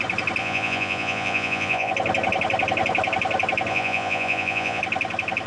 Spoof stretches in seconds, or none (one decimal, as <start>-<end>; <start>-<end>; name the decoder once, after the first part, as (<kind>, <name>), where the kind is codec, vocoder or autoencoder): 0.4-1.9 (vocoder, Vocos); 3.7-4.8